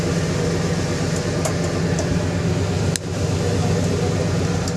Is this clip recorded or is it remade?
recorded